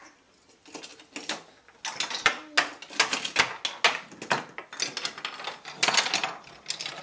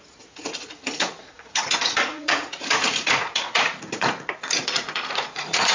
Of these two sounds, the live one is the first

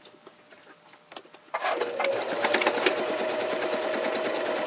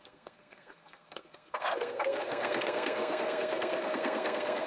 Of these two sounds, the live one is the first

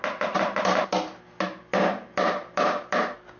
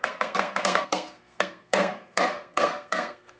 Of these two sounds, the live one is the first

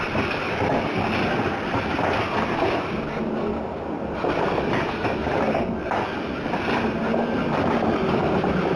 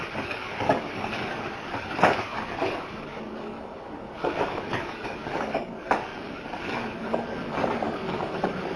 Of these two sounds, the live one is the first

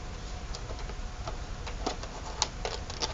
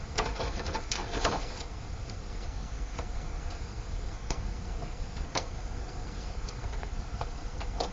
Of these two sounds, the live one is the first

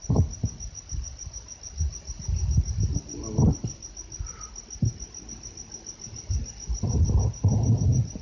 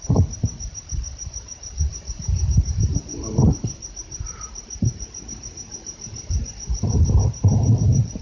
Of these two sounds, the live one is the first